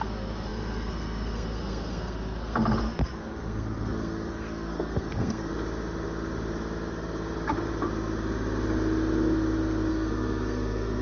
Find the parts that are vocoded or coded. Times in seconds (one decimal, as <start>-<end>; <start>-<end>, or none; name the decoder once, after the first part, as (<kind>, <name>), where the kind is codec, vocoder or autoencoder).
0.0-5.5 (codec, SNAC); 9.9-11.0